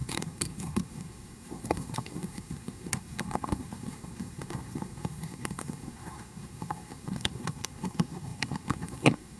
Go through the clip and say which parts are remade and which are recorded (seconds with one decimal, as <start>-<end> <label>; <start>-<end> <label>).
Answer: 0.0-9.4 remade